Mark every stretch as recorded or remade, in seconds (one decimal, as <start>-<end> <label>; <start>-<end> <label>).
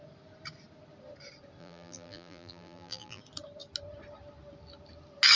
0.0-1.6 recorded; 1.6-3.2 remade; 3.2-5.4 recorded